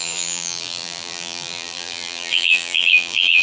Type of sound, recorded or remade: remade